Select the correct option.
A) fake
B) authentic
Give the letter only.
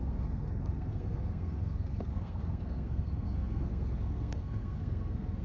A